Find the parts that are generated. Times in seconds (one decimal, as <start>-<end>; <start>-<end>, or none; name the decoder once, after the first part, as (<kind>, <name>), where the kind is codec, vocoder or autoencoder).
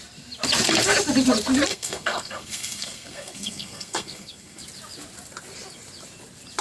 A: 1.7-4.6 (codec, SNAC)